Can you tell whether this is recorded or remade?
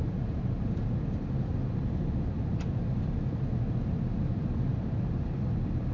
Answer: recorded